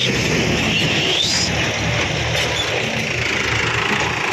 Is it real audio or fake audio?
real